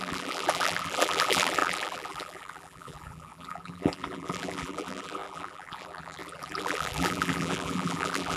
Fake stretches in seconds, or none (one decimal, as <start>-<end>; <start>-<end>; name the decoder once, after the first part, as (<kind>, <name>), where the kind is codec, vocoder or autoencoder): 0.0-8.4 (vocoder, BigVGAN v2)